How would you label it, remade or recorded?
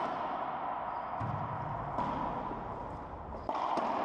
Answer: recorded